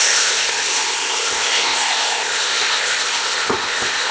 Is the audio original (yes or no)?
no